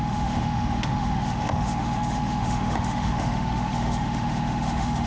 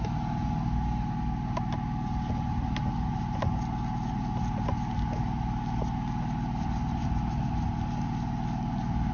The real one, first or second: second